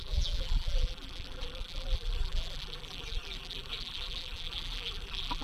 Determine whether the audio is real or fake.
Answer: fake